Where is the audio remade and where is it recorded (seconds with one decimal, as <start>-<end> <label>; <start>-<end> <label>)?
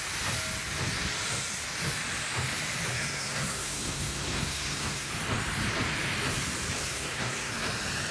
0.0-2.9 recorded; 2.9-5.1 remade; 5.1-6.8 recorded; 6.8-7.5 remade; 7.5-8.1 recorded